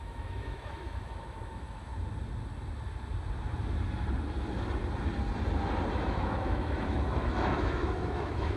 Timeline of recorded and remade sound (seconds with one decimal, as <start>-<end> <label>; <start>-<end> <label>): 0.0-1.9 remade; 1.9-6.0 recorded; 6.0-8.6 remade